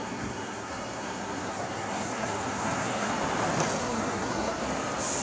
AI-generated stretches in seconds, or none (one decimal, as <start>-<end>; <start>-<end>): 0.0-3.1; 3.8-4.6